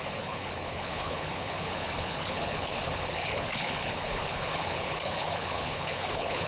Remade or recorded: remade